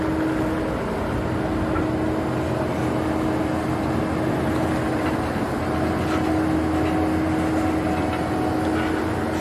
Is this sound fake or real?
real